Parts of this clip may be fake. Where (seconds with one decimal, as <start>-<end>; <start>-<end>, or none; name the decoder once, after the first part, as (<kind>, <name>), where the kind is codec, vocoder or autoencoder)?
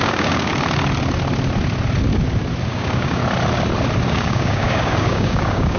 0.0-0.5 (codec, DAC); 2.7-3.2; 4.1-5.8